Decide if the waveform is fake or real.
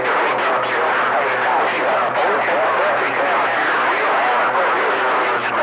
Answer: real